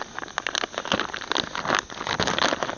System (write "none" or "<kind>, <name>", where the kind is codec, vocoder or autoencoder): none